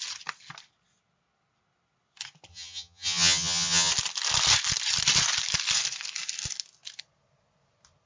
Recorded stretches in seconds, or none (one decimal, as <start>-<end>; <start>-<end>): 0.0-2.5; 3.9-8.1